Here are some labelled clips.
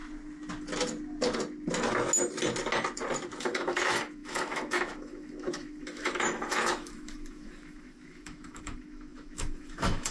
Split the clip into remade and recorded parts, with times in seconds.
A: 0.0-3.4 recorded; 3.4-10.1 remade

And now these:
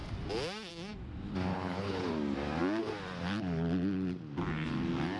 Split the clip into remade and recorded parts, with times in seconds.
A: 0.0-1.5 recorded; 1.5-2.1 remade; 2.1-5.2 recorded

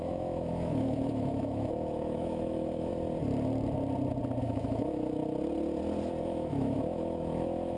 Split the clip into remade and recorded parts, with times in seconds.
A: 0.0-2.9 remade; 2.9-4.4 recorded; 4.4-5.2 remade; 5.2-6.2 recorded; 6.2-7.8 remade

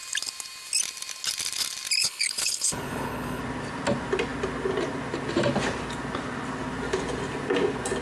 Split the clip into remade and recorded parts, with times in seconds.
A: 0.0-2.0 recorded; 2.0-3.4 remade; 3.4-8.0 recorded

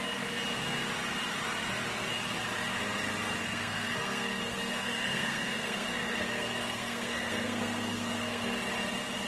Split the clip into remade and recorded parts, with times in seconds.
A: 0.0-3.4 recorded; 3.4-8.6 remade; 8.6-9.3 recorded

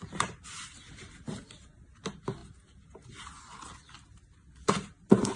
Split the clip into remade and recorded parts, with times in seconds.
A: 0.0-5.4 recorded

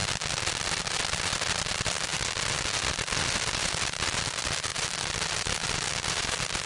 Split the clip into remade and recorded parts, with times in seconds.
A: 0.0-6.7 recorded

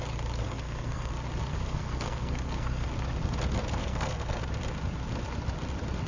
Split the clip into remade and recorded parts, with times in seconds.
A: 0.0-0.4 recorded; 0.4-1.1 remade; 1.1-1.5 recorded; 1.5-2.9 remade; 2.9-3.8 recorded; 3.8-4.4 remade; 4.4-6.1 recorded